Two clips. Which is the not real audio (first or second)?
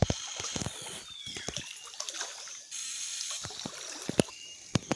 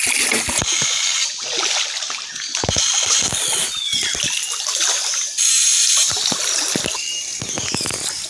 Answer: first